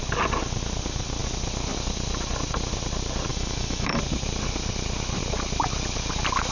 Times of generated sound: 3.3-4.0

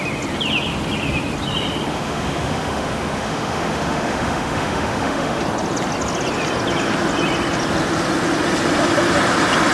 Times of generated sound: 1.9-5.4

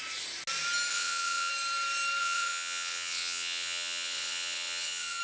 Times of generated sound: 0.9-1.5; 2.2-5.2

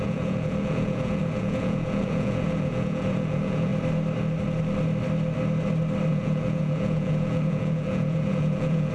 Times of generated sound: 0.0-3.7; 6.1-8.9

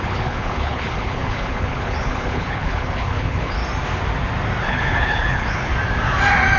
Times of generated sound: 0.0-3.6; 4.6-5.7

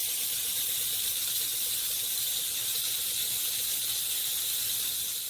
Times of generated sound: none